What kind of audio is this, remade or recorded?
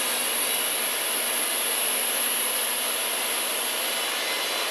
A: recorded